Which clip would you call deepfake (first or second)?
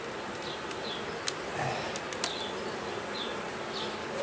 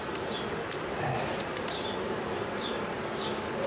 second